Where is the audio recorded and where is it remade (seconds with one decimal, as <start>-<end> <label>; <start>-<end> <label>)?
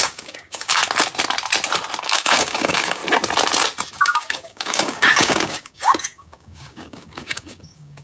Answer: 0.0-0.8 remade; 0.8-2.0 recorded; 2.0-3.0 remade; 3.0-3.9 recorded; 3.9-8.0 remade